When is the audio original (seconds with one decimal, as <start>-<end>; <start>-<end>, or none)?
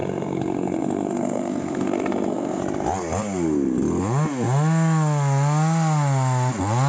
2.6-6.9